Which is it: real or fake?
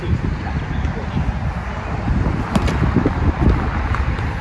real